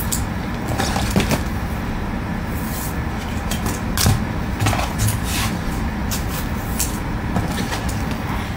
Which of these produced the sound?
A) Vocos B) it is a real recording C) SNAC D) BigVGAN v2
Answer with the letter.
B